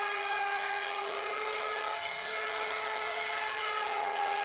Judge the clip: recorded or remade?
remade